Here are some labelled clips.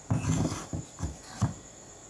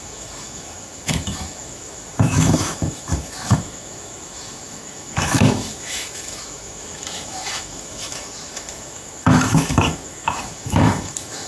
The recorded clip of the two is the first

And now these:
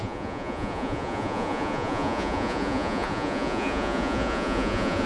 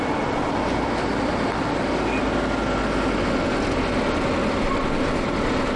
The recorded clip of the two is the second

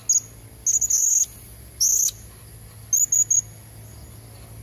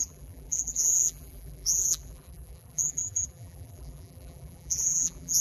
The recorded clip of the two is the first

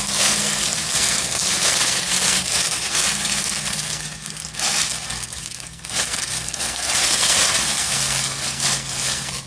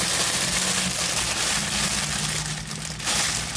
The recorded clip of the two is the second